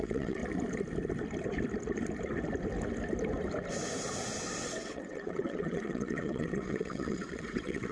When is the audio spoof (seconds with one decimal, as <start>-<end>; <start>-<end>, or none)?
0.0-0.4; 4.6-7.9

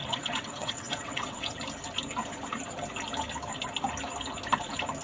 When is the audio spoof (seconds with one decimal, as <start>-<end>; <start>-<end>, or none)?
0.0-1.6

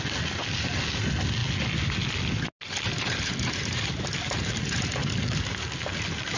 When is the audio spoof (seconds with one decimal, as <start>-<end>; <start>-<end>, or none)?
none

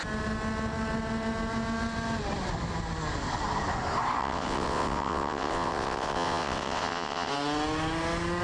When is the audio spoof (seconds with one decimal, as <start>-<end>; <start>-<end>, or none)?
4.2-7.3

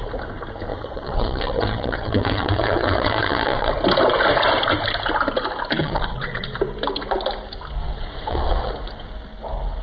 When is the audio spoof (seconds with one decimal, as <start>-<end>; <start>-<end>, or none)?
0.7-3.7; 5.8-6.6; 7.8-8.7

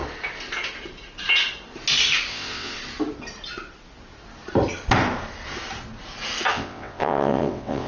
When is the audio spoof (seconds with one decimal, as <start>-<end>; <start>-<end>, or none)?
2.3-2.8; 6.5-7.9